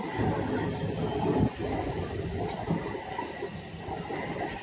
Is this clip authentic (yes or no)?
yes